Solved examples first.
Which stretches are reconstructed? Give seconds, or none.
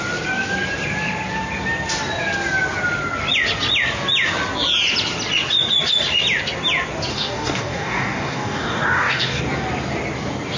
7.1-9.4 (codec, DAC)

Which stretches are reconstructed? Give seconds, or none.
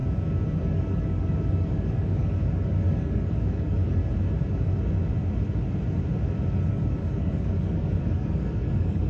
0.6-4.0 (codec, DAC); 6.7-9.1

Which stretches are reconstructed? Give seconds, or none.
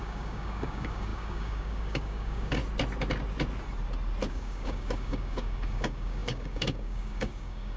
0.0-2.6 (codec, DAC); 4.3-7.8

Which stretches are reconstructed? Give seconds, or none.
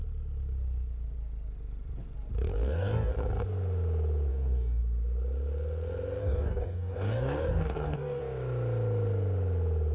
2.5-3.1 (codec, DAC); 4.3-4.8; 6.2-8.2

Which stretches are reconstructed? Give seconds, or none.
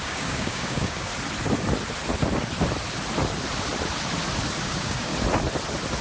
0.0-1.1 (codec, DAC); 4.6-5.1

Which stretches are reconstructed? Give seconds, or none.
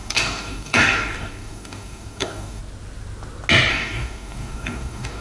0.0-2.6 (codec, DAC); 3.7-5.2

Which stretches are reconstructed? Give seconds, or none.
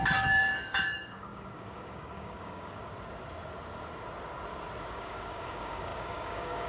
0.0-2.8 (codec, DAC); 4.9-6.7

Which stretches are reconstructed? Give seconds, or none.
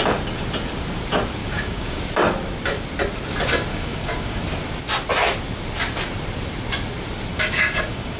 1.4-2.0 (codec, DAC); 3.7-4.4; 7.3-8.2